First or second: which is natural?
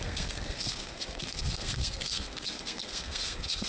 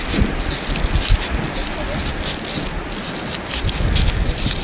second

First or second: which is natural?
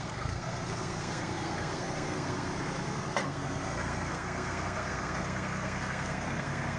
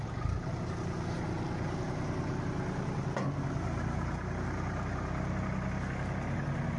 second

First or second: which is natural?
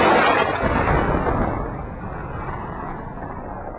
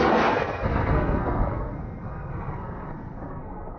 first